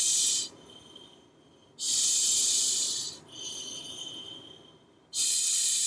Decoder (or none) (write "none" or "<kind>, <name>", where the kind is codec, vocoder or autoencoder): vocoder, BigVGAN v2